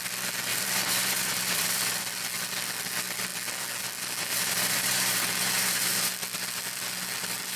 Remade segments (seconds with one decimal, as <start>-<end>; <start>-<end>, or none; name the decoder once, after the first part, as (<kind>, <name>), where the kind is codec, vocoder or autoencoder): 0.5-2.0 (vocoder, BigVGAN v2); 4.3-6.1